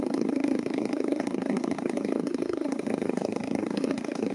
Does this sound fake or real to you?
fake